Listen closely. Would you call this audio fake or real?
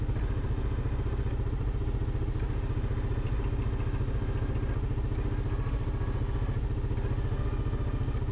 real